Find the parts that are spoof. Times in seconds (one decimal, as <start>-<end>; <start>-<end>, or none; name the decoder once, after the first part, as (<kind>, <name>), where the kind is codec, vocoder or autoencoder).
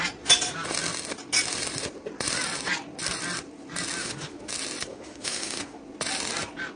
4.0-4.5 (autoencoder, DAC-VAE); 4.9-5.8